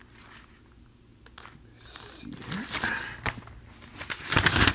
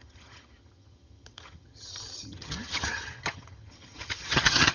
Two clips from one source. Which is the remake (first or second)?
second